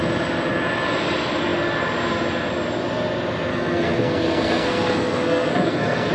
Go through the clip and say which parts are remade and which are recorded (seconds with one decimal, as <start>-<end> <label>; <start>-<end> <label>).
0.0-3.5 recorded; 3.5-6.1 remade